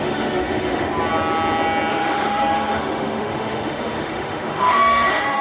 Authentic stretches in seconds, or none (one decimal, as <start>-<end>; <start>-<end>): 0.9-1.9